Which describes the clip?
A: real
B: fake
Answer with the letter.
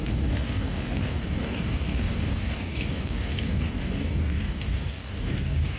B